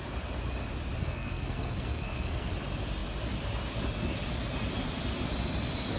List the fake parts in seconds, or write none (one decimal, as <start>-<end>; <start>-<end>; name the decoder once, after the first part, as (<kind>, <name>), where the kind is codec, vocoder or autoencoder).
1.0-2.5 (codec, SNAC)